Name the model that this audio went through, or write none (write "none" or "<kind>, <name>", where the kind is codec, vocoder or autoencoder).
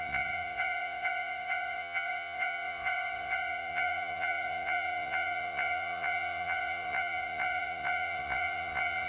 vocoder, Vocos